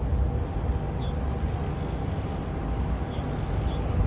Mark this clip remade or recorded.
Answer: recorded